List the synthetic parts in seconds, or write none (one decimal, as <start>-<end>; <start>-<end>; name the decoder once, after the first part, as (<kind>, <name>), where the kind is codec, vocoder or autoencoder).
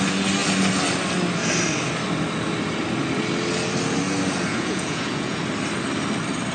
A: 4.5-5.4 (vocoder, Vocos)